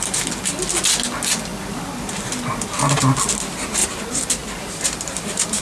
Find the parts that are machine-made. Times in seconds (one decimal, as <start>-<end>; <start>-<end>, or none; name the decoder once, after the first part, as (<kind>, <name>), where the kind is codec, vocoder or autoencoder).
3.8-5.6 (vocoder, BigVGAN v2)